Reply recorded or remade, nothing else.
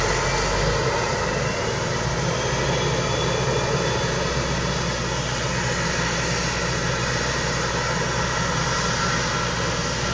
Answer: recorded